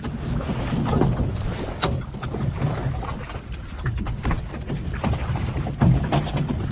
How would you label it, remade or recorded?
recorded